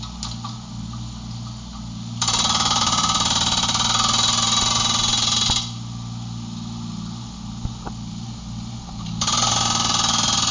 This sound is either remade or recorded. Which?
recorded